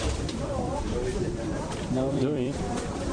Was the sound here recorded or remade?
remade